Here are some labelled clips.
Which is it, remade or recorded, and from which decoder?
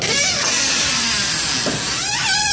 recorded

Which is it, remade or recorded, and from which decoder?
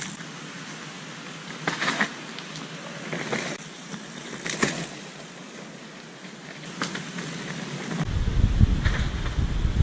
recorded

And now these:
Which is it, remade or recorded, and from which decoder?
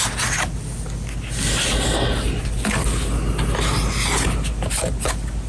recorded